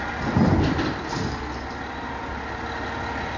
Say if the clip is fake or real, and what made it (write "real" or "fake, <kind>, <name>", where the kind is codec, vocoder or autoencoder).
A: real